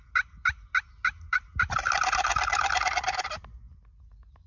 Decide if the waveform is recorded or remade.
recorded